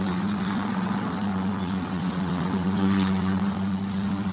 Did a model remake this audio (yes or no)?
yes